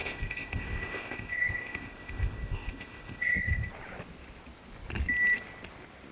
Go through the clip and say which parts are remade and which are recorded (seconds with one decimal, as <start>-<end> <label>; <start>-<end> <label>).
0.0-3.7 remade; 3.7-6.1 recorded